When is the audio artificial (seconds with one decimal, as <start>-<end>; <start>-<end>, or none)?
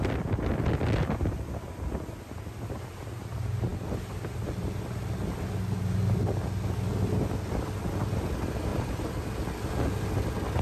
8.7-9.4